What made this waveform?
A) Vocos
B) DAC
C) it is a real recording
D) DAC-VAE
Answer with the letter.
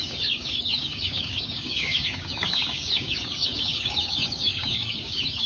B